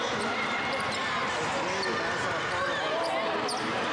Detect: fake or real real